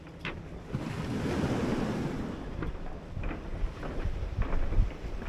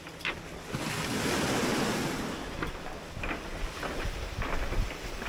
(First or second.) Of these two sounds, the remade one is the first